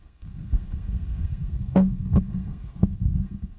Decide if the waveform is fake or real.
fake